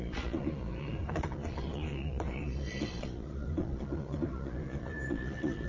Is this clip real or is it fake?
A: fake